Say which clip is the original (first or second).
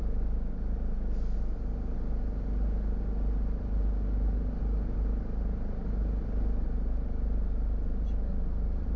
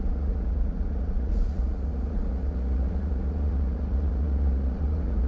first